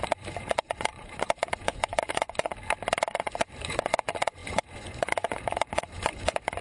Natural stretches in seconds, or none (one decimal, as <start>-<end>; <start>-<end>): 2.5-3.1